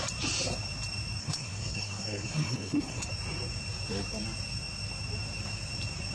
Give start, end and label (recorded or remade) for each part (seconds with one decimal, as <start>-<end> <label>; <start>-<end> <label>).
0.0-1.2 recorded; 1.2-3.1 remade; 3.1-6.1 recorded